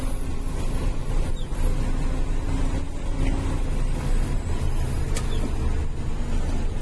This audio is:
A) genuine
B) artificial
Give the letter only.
A